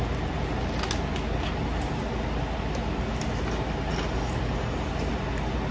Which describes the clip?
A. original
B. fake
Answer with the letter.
A